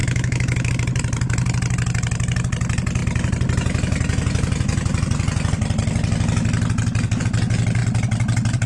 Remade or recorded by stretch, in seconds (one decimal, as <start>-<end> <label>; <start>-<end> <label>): 0.0-0.7 remade; 0.7-8.7 recorded

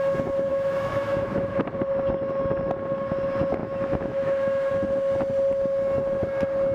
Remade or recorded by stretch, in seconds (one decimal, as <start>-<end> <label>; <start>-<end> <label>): 0.0-0.5 recorded; 0.5-1.7 remade; 1.7-3.6 recorded; 3.6-4.7 remade; 4.7-6.7 recorded

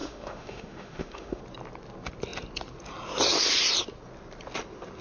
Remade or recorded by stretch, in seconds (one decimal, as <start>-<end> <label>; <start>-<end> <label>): 0.0-1.4 remade; 1.4-5.0 recorded

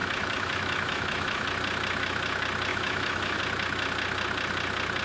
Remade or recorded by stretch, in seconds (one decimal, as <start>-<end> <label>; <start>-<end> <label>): 0.0-1.5 remade; 1.5-2.7 recorded; 2.7-3.4 remade; 3.4-5.0 recorded